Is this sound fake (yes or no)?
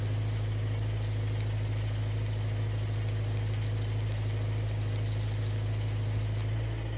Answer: no